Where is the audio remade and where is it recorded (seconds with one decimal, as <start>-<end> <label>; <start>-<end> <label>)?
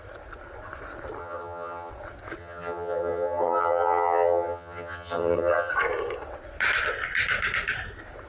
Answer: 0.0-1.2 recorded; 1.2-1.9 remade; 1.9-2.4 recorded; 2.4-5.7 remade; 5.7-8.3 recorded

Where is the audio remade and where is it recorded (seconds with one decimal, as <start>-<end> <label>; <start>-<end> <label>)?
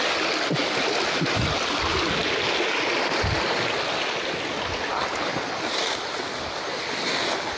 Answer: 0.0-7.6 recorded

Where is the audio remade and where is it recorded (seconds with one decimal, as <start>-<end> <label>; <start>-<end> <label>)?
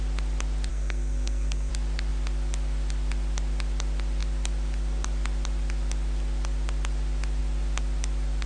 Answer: 0.0-0.7 recorded; 0.7-1.7 remade; 1.7-8.5 recorded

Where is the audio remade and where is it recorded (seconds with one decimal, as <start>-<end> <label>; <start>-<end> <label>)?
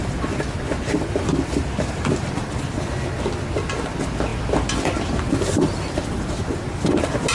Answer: 0.0-7.3 recorded